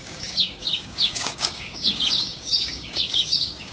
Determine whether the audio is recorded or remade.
remade